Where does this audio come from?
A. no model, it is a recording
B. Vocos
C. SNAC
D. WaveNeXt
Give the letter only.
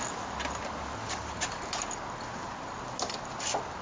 A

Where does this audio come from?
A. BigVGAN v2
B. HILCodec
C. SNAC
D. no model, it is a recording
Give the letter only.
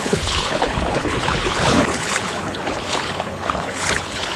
B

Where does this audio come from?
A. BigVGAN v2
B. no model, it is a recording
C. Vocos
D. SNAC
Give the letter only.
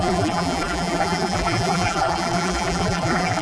A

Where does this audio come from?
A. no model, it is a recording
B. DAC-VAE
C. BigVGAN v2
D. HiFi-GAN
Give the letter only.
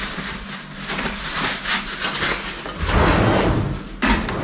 A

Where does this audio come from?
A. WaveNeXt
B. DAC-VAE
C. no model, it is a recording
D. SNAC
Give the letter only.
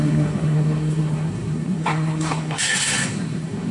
D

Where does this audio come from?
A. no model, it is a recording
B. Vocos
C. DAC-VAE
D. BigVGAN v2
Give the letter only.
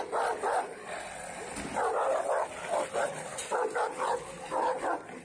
A